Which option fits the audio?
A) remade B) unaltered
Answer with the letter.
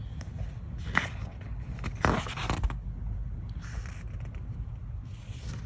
B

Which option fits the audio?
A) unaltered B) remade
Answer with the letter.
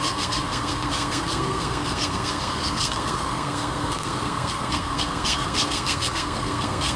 B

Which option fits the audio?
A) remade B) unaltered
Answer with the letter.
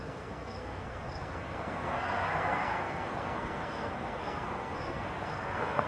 A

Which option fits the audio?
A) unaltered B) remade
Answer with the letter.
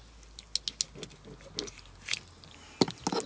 A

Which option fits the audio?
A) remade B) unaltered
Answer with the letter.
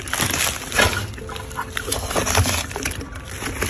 B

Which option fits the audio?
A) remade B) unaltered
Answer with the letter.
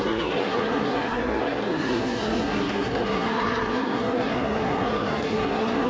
A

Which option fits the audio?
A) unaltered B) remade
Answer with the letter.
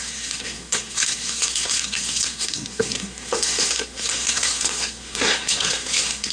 B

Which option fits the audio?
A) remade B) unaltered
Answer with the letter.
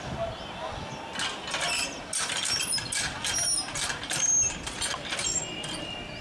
B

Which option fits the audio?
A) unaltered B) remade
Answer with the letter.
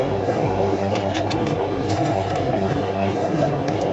B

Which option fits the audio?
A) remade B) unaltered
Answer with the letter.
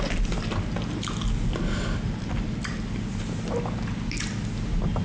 B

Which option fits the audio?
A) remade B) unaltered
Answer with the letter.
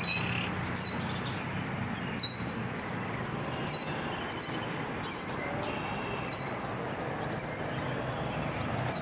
B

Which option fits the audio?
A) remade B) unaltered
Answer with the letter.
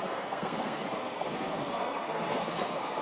A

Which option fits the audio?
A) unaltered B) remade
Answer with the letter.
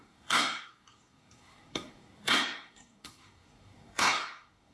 B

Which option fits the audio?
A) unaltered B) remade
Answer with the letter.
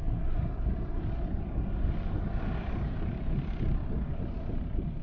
A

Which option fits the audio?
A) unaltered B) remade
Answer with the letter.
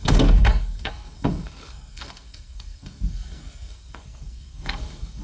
B